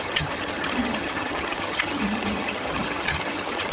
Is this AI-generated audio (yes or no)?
yes